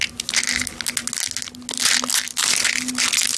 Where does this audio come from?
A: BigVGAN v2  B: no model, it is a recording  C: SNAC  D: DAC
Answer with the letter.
B